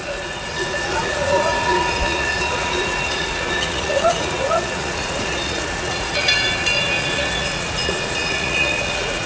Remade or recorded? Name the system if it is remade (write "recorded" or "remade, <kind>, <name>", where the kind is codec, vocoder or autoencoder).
remade, vocoder, Vocos